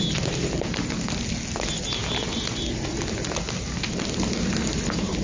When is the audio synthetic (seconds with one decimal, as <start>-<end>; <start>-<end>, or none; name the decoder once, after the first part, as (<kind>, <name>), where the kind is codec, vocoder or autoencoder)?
none